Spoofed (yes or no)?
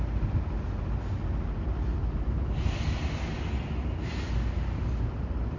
no